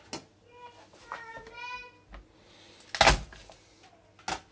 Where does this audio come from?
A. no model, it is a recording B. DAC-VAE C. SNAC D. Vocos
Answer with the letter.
A